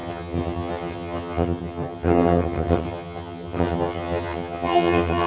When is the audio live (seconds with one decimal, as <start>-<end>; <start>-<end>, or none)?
none